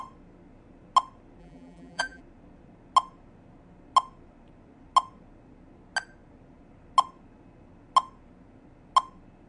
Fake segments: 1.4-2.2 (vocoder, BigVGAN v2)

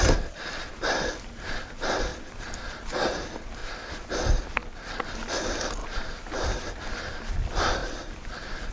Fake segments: 2.1-2.7 (vocoder, BigVGAN v2); 3.6-4.1; 5.8-7.3; 7.8-8.7